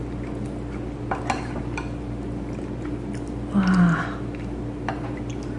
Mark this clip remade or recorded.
recorded